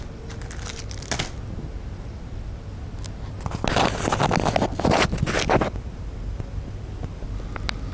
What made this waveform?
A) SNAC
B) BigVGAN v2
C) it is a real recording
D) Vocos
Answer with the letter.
C